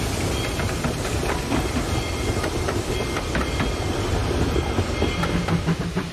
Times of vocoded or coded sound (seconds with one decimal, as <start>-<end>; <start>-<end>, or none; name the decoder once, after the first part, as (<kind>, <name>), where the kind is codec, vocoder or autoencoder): none